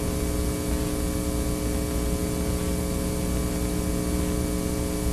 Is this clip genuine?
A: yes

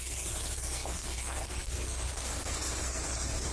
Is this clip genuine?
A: no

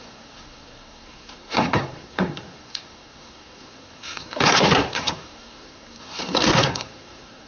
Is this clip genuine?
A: no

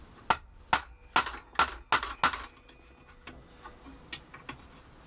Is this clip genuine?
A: yes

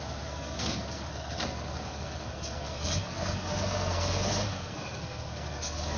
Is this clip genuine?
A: no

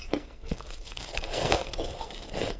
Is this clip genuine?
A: no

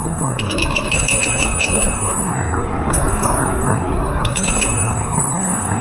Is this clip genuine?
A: no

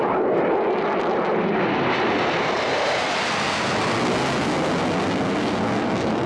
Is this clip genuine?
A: yes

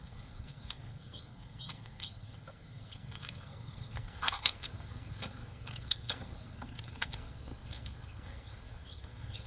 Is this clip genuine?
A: no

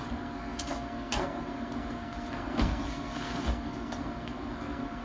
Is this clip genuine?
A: no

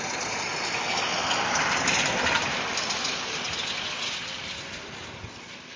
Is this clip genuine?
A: yes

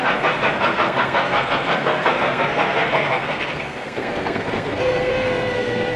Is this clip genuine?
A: no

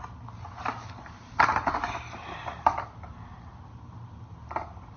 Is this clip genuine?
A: yes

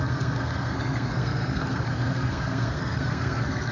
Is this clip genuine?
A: no